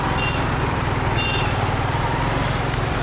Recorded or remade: recorded